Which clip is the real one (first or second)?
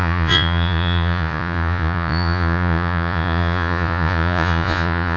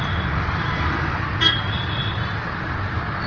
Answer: second